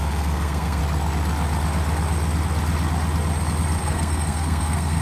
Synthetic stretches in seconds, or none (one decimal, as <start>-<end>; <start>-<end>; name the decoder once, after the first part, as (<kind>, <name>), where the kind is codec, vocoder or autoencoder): 0.0-0.8 (codec, SNAC); 3.8-5.0